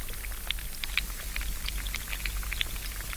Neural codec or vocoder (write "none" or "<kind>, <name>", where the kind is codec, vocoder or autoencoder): none